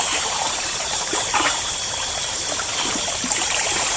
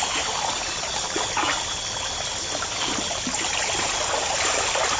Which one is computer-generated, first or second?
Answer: first